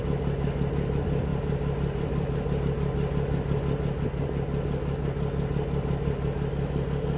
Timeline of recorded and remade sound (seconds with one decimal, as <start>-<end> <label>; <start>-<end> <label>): 0.0-1.3 recorded; 1.3-2.6 remade; 2.6-7.2 recorded